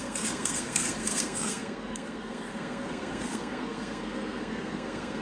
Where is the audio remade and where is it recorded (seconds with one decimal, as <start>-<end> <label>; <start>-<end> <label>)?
0.0-5.2 remade